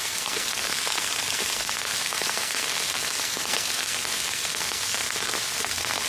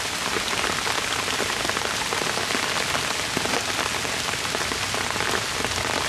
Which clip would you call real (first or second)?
second